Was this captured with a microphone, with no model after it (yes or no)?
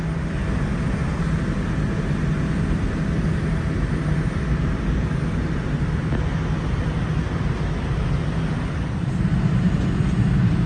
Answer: yes